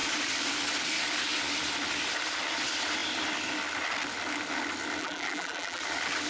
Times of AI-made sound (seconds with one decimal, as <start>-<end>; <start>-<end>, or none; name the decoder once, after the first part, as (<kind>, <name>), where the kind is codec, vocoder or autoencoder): 5.0-5.8 (vocoder, BigVGAN v2)